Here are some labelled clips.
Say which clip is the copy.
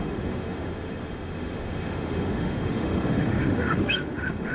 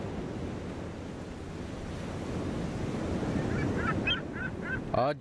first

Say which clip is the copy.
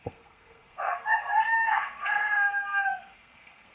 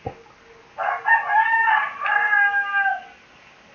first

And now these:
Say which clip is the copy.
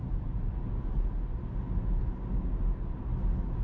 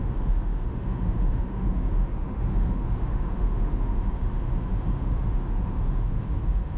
second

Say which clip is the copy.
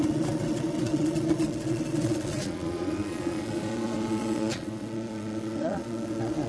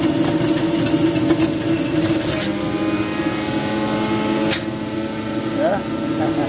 first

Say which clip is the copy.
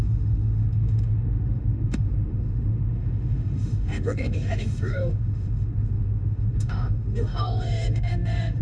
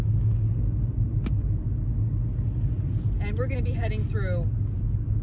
first